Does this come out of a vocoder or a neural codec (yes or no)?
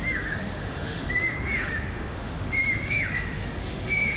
yes